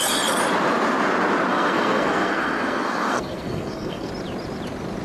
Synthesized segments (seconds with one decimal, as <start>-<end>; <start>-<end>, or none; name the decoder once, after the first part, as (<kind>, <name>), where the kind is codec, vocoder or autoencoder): 1.5-4.1 (codec, SNAC)